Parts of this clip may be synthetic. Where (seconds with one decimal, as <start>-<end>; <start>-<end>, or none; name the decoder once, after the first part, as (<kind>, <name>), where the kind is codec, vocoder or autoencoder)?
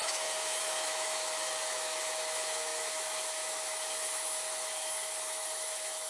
0.0-6.1 (autoencoder, DAC-VAE)